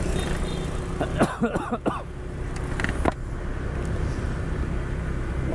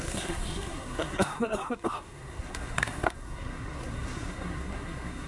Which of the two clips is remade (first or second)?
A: second